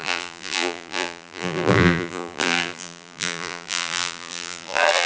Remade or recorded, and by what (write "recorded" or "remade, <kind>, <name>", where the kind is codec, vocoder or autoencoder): remade, vocoder, BigVGAN v2